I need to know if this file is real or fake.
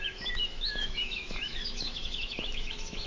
fake